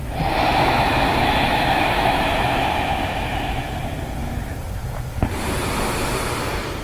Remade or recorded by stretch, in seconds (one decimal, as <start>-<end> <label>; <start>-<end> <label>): 0.0-0.5 recorded; 0.5-3.8 remade; 3.8-6.8 recorded